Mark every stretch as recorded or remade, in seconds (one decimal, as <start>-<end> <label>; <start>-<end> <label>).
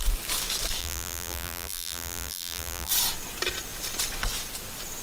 0.0-0.8 recorded; 0.8-2.9 remade; 2.9-5.0 recorded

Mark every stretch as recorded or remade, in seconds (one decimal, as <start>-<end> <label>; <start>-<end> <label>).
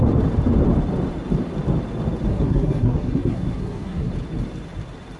0.0-2.3 recorded; 2.3-4.1 remade; 4.1-5.2 recorded